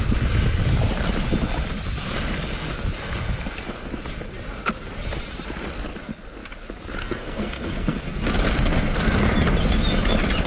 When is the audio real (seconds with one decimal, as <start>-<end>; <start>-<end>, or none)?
0.0-7.0; 8.2-10.5